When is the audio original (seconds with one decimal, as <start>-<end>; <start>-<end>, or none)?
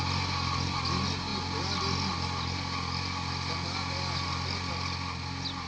0.0-5.7